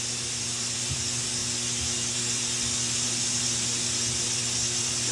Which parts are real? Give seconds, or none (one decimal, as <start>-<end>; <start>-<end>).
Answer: 0.0-5.1